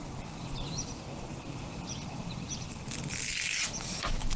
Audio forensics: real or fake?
fake